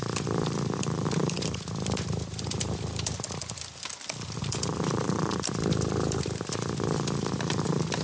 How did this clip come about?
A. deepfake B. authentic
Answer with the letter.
A